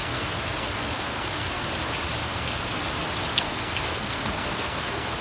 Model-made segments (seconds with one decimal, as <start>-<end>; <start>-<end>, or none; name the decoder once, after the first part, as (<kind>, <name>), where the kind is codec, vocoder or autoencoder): 0.0-1.6 (codec, SNAC); 2.2-2.8; 3.3-5.2